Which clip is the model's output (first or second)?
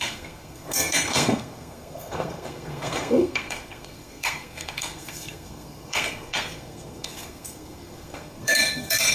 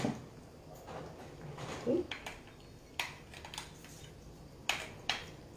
first